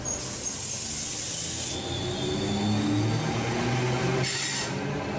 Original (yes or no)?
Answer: yes